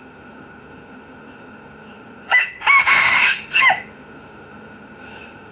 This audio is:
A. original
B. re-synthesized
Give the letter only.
B